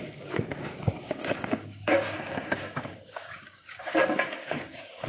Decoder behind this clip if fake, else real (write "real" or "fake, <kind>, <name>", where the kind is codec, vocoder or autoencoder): fake, codec, DAC